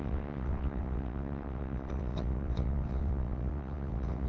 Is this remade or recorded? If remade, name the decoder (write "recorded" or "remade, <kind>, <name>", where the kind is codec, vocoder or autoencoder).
remade, vocoder, WaveNeXt